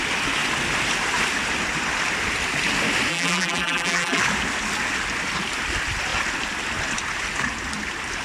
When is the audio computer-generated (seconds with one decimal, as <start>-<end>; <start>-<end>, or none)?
3.1-4.2